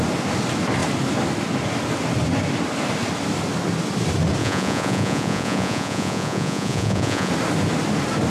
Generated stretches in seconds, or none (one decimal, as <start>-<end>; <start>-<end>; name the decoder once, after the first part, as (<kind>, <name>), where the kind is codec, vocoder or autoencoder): 4.4-7.3 (vocoder, Vocos)